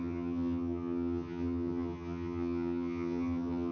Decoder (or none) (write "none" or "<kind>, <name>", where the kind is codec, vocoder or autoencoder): vocoder, HiFi-GAN